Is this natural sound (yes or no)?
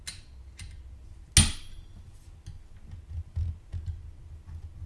yes